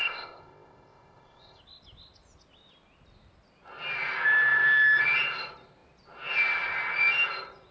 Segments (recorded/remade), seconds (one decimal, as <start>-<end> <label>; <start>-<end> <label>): 0.0-1.6 remade; 1.6-7.7 recorded